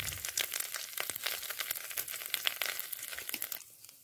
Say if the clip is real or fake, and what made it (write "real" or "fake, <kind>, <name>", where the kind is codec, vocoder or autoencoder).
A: real